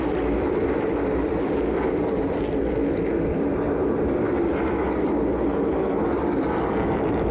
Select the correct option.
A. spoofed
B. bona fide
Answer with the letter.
A